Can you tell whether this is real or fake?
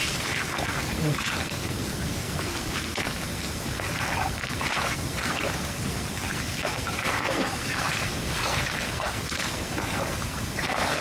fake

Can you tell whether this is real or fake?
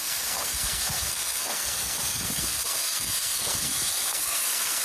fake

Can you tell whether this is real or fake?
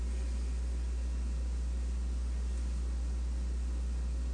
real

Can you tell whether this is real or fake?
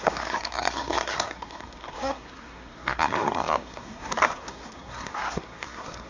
fake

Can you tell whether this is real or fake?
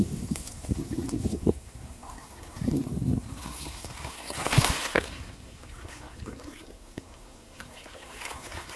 fake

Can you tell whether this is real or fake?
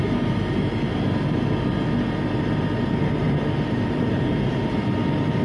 real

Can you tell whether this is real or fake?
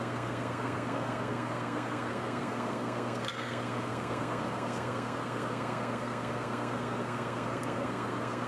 fake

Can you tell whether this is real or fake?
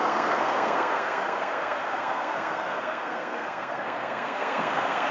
fake